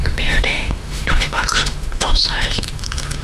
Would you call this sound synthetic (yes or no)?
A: yes